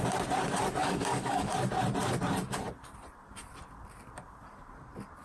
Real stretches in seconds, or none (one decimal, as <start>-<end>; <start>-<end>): 0.0-0.8; 1.5-5.2

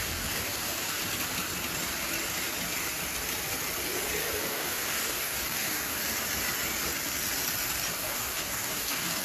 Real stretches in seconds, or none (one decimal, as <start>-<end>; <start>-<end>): 1.0-4.4; 6.0-7.9

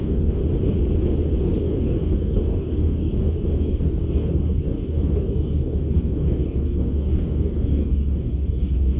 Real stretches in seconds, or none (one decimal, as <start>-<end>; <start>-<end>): 0.4-1.4

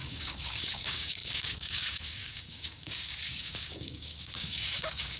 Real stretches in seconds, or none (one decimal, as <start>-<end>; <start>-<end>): none

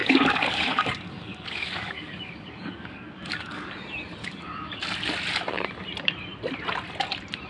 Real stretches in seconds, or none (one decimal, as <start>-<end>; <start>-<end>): 3.7-4.2; 4.8-7.5

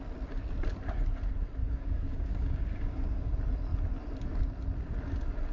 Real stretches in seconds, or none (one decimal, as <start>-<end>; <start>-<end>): 0.0-1.6; 3.3-5.5

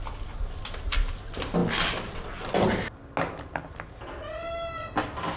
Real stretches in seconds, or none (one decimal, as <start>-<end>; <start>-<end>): 0.0-5.4

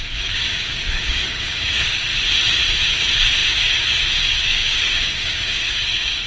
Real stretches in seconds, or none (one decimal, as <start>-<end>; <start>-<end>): 2.1-2.9